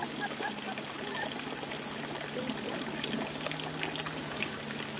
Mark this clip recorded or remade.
recorded